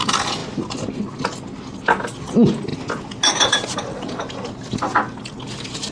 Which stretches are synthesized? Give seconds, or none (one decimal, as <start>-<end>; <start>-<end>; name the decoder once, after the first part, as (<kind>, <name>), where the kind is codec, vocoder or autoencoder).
none